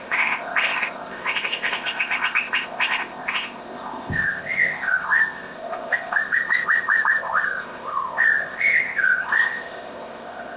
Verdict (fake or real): fake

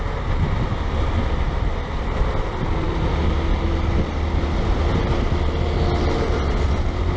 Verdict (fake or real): real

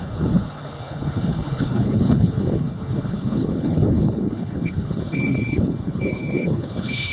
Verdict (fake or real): fake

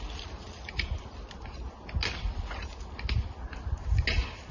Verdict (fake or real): real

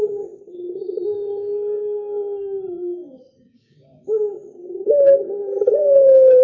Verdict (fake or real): fake